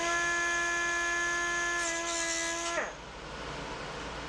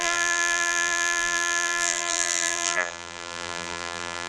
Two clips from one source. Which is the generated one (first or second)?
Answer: second